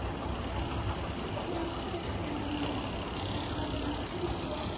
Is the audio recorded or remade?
recorded